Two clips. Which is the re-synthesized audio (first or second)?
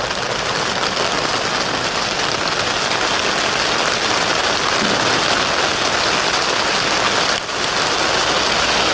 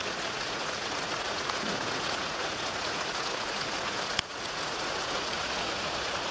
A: second